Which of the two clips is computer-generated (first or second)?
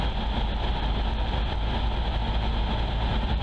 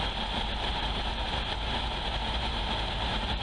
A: second